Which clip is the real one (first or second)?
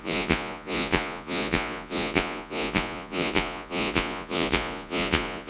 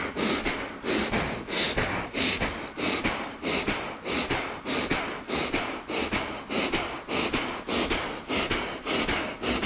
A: second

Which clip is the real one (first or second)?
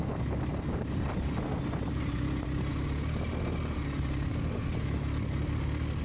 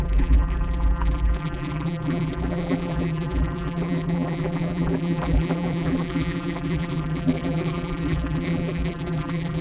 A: first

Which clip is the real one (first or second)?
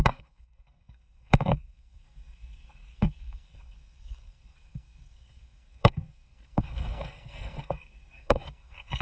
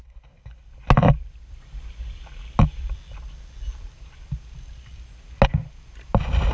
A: second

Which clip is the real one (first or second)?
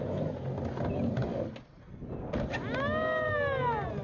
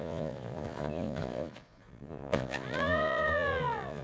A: first